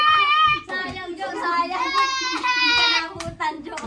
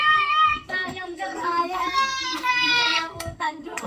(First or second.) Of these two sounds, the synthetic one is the second